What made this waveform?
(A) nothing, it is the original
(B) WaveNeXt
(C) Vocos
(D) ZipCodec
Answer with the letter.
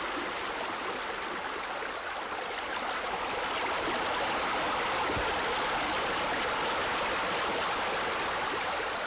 A